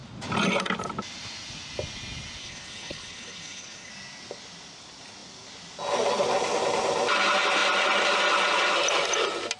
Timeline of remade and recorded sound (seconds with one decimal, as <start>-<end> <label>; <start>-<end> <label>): 0.0-2.4 recorded; 2.4-3.9 remade; 3.9-9.6 recorded